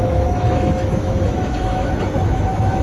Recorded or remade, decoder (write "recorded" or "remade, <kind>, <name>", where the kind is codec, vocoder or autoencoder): remade, autoencoder, DAC-VAE